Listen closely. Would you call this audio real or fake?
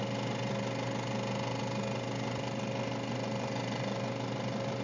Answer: real